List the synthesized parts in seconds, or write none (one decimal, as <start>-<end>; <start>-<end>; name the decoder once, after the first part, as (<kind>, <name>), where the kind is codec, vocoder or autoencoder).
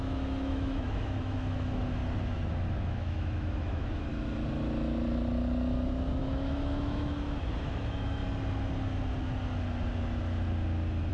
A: 0.0-2.0 (autoencoder, DAC-VAE); 2.5-4.1; 6.2-8.2